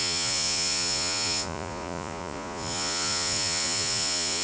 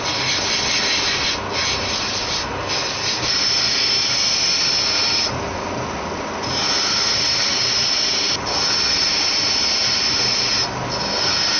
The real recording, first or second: second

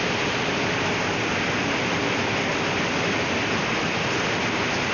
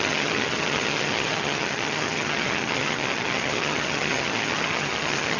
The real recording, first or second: first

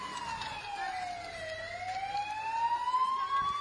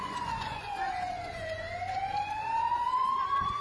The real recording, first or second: first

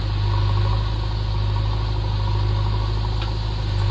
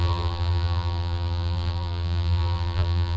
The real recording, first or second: first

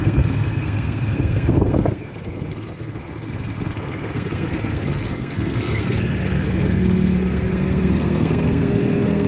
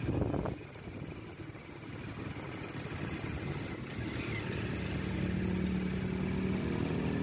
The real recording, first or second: second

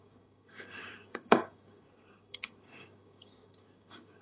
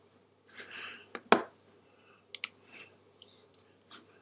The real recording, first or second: second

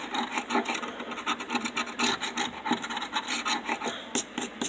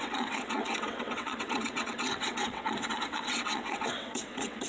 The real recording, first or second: first